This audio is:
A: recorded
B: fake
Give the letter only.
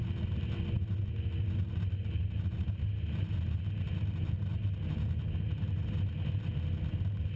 A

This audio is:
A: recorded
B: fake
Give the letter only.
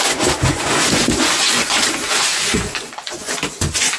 B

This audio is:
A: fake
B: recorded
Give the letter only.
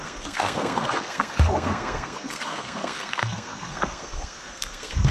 A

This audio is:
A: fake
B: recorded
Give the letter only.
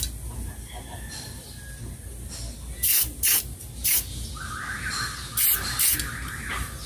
B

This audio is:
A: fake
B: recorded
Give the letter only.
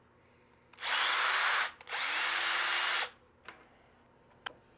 B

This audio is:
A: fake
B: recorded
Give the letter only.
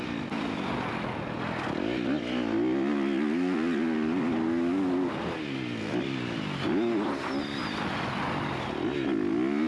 B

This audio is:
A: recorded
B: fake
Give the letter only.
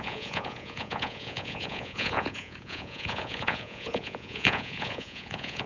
B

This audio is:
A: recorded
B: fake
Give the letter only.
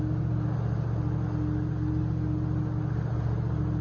A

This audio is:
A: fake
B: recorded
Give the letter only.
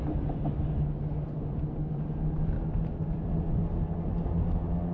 B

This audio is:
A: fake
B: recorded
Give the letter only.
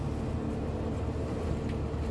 B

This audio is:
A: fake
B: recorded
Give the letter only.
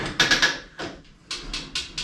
B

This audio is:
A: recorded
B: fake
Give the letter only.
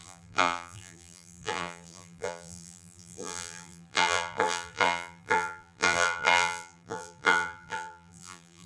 B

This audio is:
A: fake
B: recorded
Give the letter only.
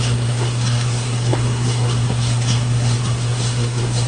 A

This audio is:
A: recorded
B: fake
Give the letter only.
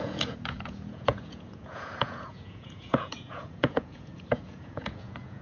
B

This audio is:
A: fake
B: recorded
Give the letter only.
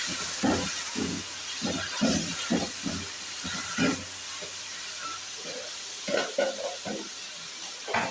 B